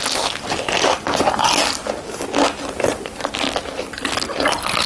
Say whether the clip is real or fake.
real